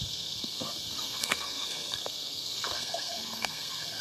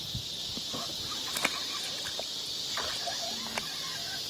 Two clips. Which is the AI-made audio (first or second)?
first